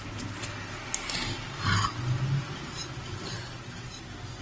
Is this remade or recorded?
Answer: recorded